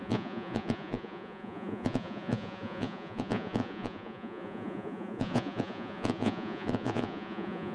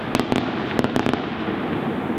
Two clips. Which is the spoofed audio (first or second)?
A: first